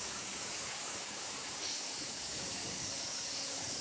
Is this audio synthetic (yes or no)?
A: yes